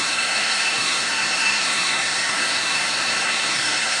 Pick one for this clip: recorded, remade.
remade